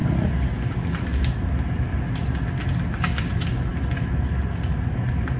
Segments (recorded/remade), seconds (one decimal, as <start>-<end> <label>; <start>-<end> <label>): 0.0-5.4 recorded